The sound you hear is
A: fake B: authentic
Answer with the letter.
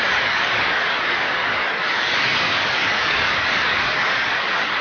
A